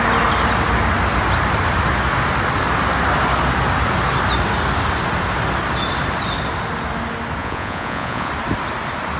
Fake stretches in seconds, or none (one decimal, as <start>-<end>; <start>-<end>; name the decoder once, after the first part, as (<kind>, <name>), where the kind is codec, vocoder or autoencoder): 7.4-8.3 (vocoder, Vocos)